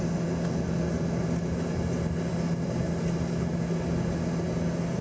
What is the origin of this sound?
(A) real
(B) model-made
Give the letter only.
A